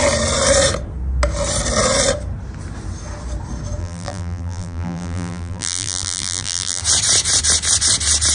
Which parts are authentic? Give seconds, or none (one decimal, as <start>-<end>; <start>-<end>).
0.0-3.8; 6.8-8.3

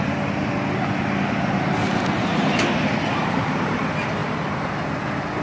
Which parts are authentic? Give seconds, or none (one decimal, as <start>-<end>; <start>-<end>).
0.0-1.8; 2.5-3.2; 3.8-4.2; 4.7-5.4

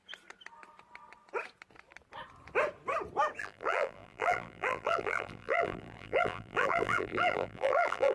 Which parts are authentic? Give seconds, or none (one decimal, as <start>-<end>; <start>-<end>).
0.0-3.4

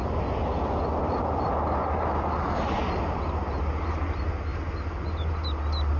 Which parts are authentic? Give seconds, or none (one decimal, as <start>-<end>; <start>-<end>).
0.0-1.8; 2.8-6.0